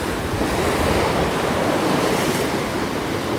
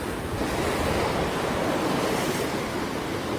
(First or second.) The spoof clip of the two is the first